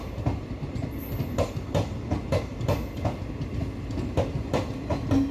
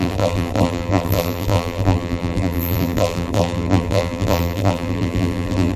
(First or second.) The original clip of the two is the first